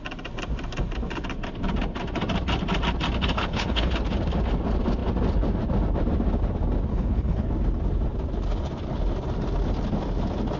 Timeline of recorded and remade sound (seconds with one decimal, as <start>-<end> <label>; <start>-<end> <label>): 0.0-3.3 recorded; 3.3-3.9 remade; 3.9-6.9 recorded; 6.9-7.5 remade; 7.5-10.6 recorded